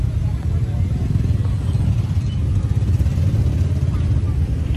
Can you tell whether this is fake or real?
real